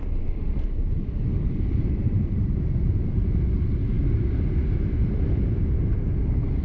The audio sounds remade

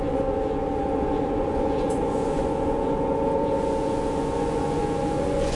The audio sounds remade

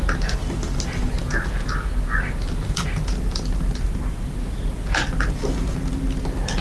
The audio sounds recorded